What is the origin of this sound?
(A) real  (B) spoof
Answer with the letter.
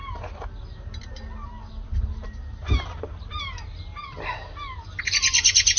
A